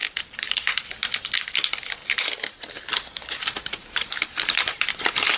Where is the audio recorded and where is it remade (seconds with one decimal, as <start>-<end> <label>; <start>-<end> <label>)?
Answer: 0.0-0.9 remade; 0.9-2.0 recorded; 2.0-5.4 remade